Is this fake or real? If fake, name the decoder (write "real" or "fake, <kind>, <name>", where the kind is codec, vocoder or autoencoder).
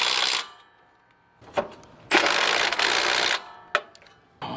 real